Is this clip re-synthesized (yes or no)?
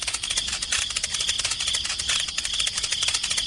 no